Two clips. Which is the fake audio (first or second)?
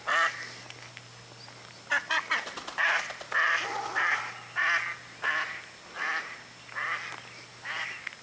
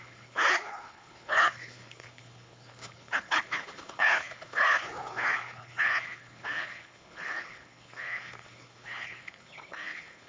second